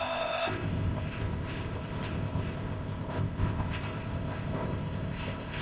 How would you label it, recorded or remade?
remade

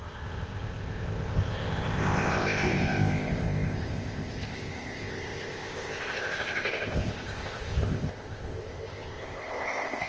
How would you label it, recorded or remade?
remade